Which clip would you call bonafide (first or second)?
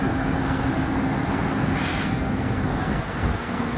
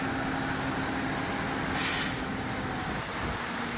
second